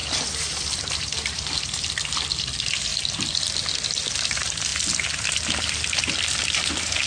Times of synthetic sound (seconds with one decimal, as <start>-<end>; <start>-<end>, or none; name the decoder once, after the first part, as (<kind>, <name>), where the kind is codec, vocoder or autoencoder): 0.0-2.9 (vocoder, BigVGAN v2); 3.9-4.7; 5.6-7.1